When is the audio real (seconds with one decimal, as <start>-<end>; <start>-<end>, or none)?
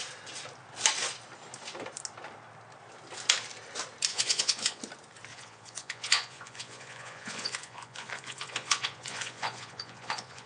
0.0-4.1; 4.8-5.3